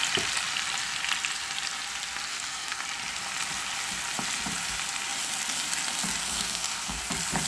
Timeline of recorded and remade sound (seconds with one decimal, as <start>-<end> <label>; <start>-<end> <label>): 0.0-2.3 recorded; 2.3-2.8 remade; 2.8-6.2 recorded; 6.2-7.1 remade; 7.1-7.5 recorded